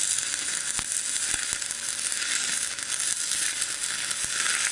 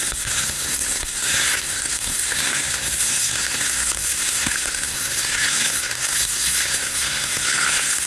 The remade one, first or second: second